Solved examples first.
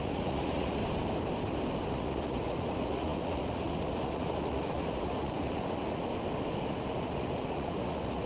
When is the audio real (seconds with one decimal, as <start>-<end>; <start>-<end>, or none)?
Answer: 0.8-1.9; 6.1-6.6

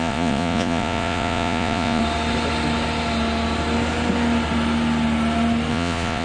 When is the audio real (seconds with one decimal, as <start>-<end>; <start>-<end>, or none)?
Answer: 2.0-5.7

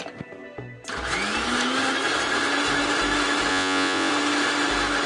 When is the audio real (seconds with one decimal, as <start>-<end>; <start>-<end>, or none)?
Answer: 0.0-3.5; 4.1-5.1

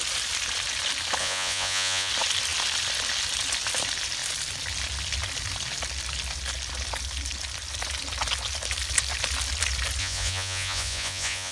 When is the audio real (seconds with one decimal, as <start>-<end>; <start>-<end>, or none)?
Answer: 0.0-1.2; 2.1-10.0

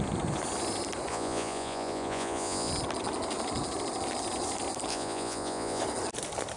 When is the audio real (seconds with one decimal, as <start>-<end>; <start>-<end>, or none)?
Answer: 0.0-1.1; 2.7-4.9; 5.8-6.6

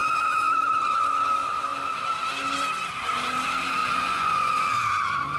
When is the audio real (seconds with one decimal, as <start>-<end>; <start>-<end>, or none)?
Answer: 0.0-3.8; 4.5-5.4

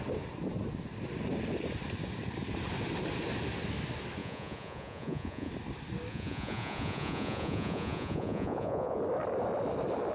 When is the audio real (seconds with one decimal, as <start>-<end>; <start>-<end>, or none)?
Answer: 0.0-4.2; 5.5-6.1; 9.0-10.1